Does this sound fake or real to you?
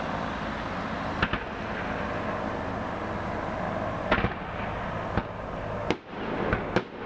real